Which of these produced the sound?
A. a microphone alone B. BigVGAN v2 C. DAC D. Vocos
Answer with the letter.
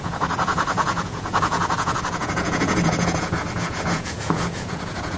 D